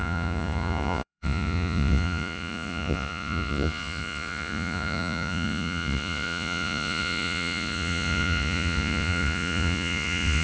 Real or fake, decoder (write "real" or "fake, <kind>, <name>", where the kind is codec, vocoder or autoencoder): fake, vocoder, Vocos